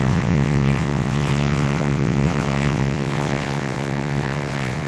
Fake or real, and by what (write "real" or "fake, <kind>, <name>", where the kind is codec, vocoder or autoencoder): fake, vocoder, WaveNeXt